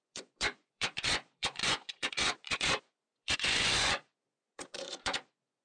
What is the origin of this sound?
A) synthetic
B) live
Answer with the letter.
A